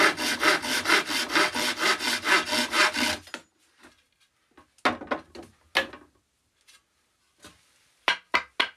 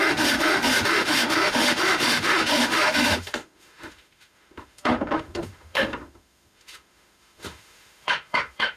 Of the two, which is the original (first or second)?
first